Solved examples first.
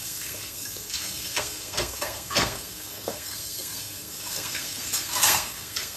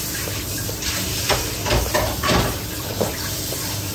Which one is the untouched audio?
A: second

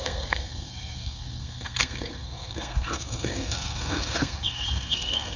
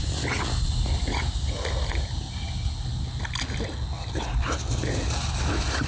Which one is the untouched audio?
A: second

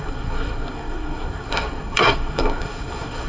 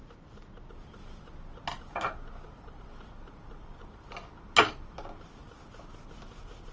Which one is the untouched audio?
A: second